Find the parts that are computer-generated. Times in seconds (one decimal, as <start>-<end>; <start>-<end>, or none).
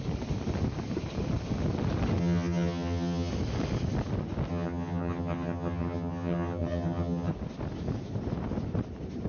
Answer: 2.2-3.3; 4.5-7.3